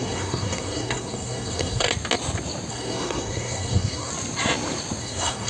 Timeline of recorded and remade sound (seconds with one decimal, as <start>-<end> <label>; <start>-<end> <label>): 0.0-1.9 remade; 1.9-2.7 recorded; 2.7-4.1 remade; 4.1-5.0 recorded; 5.0-5.5 remade